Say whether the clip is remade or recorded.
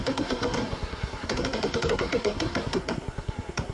remade